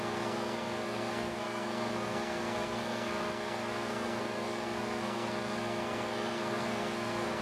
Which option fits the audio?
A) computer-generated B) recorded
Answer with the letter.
A